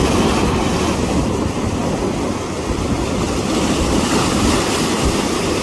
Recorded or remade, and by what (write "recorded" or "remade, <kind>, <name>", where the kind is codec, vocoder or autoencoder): recorded